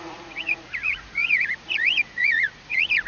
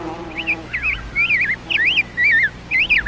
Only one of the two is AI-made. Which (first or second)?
first